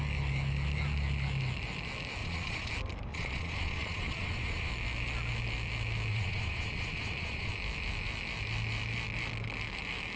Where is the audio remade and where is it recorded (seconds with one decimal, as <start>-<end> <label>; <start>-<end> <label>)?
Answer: 0.0-2.2 recorded; 2.2-2.7 remade; 2.7-3.1 recorded; 3.1-4.7 remade; 4.7-6.1 recorded; 6.1-7.5 remade; 7.5-10.2 recorded